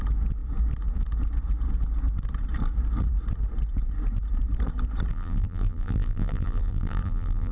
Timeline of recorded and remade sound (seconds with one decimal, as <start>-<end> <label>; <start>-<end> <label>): 0.0-5.1 recorded; 5.1-7.5 remade